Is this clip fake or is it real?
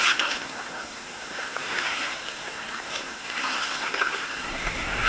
fake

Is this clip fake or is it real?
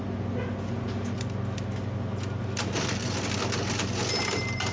real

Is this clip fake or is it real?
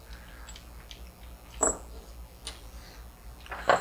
real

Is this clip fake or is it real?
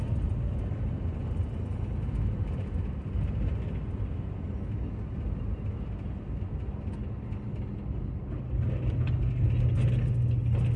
real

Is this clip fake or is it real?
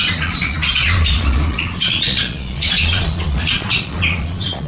fake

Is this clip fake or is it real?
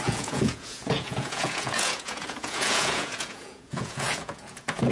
fake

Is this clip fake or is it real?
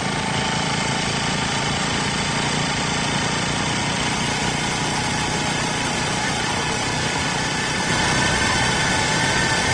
real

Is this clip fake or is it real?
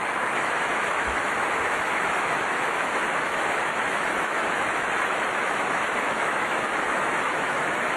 fake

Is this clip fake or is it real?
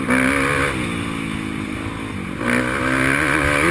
real